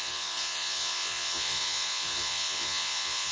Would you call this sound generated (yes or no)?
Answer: yes